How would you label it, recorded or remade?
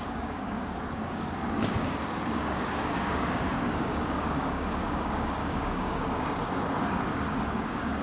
remade